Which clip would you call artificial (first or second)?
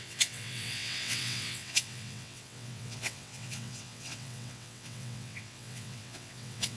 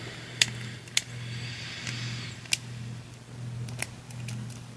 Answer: first